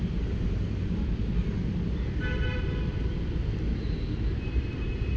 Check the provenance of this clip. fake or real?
real